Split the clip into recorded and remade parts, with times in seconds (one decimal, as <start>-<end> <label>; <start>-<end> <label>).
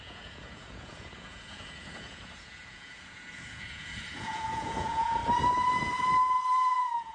0.0-5.2 remade; 5.2-6.5 recorded; 6.5-7.1 remade